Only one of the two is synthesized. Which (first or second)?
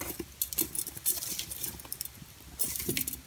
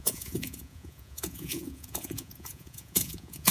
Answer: second